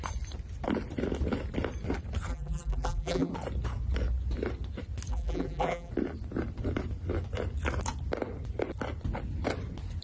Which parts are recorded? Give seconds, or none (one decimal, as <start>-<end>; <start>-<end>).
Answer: 0.0-2.3; 3.3-5.1; 5.9-10.0